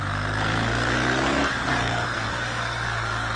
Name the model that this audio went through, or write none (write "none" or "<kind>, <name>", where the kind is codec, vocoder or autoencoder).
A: codec, SNAC